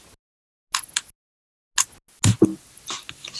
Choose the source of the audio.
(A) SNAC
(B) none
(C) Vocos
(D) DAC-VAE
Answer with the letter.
B